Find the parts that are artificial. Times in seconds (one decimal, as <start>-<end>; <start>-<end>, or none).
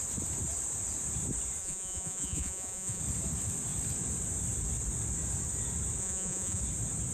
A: 1.6-3.0; 6.0-6.6